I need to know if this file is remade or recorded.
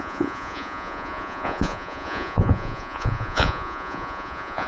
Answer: remade